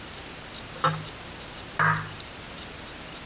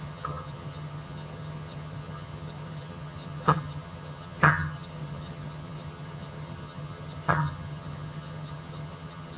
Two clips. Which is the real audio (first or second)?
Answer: first